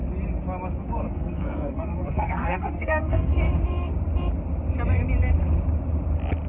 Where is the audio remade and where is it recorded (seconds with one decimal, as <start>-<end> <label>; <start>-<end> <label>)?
0.0-0.8 recorded; 0.8-3.3 remade; 3.3-6.5 recorded